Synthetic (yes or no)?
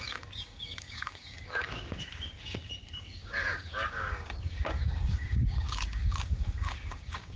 yes